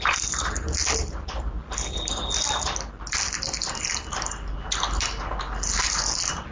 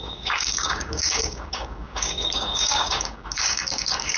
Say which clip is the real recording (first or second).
first